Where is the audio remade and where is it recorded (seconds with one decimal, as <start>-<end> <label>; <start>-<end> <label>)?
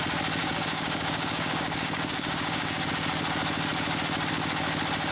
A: 0.0-0.4 recorded; 0.4-2.9 remade; 2.9-5.1 recorded